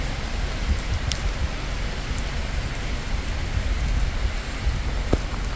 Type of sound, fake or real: real